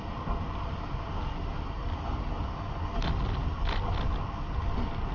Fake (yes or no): no